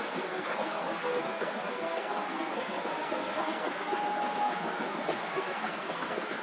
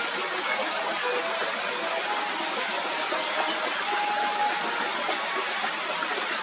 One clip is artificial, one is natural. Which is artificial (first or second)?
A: first